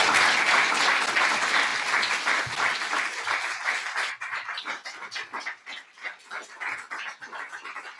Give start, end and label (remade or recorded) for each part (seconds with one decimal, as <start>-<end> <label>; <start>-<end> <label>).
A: 0.0-8.0 recorded